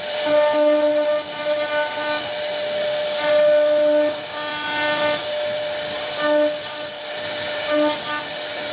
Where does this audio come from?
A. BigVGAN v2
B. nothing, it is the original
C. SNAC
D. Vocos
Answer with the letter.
B